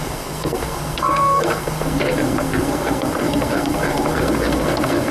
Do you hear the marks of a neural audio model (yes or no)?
yes